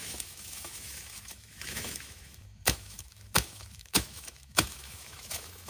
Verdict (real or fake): fake